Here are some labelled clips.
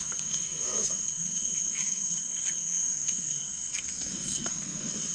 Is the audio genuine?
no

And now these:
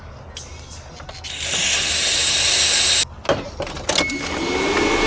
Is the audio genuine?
yes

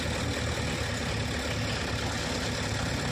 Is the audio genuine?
yes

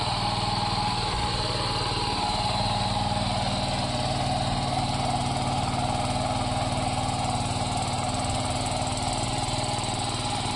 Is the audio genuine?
yes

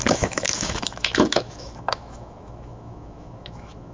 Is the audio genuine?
no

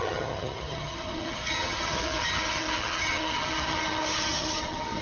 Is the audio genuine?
no